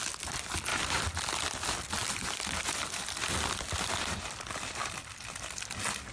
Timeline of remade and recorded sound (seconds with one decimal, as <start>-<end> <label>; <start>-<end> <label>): 0.0-0.7 recorded; 0.7-1.2 remade; 1.2-2.0 recorded; 2.0-6.1 remade